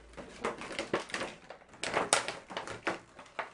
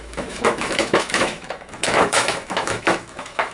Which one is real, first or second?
first